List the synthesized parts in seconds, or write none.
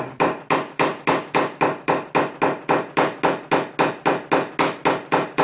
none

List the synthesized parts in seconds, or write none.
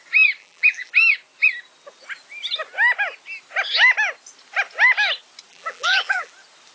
0.4-0.9; 5.5-6.3